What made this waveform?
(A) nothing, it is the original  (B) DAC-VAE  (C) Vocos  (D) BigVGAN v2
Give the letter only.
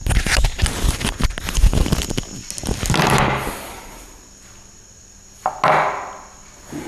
A